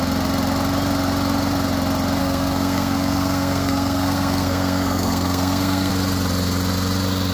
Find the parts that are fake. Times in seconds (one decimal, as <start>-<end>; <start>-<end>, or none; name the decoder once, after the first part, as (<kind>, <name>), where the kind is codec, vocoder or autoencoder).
2.2-5.9 (codec, SNAC)